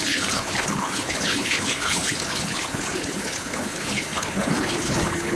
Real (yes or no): no